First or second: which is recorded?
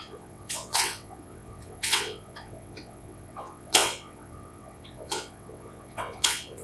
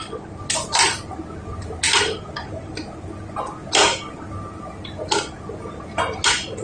second